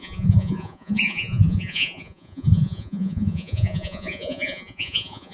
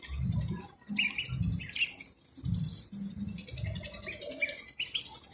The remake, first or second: first